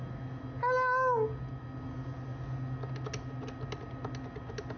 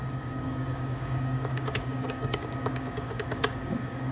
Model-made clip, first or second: second